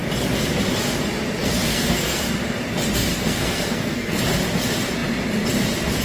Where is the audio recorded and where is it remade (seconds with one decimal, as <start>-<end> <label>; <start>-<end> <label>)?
0.0-1.4 recorded; 1.4-2.2 remade; 2.2-3.1 recorded; 3.1-4.2 remade; 4.2-6.0 recorded